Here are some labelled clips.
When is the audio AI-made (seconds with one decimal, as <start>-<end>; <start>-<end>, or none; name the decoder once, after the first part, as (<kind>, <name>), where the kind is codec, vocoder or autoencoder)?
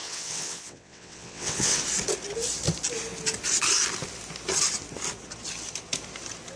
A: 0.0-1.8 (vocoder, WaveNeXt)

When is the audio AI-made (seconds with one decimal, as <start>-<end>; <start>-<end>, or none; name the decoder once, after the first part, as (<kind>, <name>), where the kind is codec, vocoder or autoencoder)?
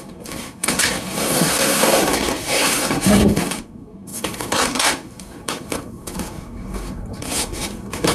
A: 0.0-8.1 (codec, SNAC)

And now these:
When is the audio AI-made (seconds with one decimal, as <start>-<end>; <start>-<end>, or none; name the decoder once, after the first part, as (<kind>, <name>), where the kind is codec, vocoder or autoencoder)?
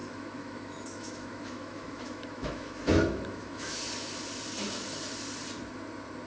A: 0.0-3.8 (autoencoder, DAC-VAE)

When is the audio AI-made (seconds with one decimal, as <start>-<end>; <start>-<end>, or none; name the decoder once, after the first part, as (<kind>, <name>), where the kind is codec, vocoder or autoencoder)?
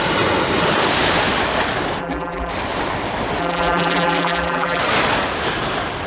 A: 2.0-2.5 (vocoder, BigVGAN v2); 3.4-4.8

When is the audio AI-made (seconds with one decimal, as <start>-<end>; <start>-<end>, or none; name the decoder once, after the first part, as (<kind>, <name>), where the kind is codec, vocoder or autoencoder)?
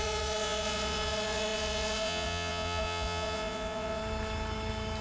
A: 0.0-4.0 (vocoder, Vocos)